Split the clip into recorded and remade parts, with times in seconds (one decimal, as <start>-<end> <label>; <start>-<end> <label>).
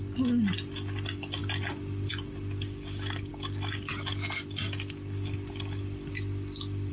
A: 0.0-6.9 recorded